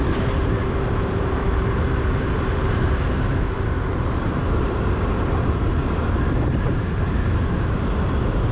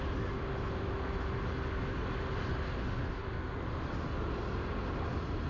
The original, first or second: second